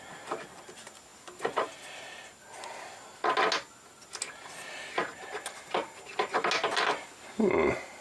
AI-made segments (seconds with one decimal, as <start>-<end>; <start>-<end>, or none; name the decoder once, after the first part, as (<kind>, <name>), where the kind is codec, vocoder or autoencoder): none